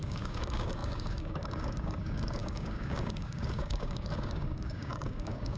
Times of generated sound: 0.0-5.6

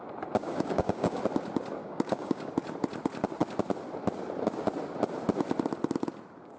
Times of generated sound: 0.4-1.2; 1.8-2.5

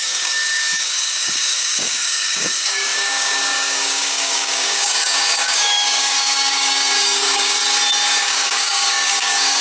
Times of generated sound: 0.0-7.6; 8.2-9.6

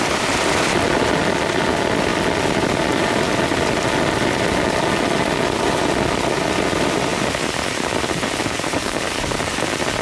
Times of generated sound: 8.4-9.4

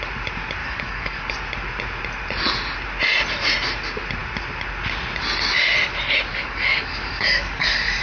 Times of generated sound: 0.6-1.3; 6.3-8.0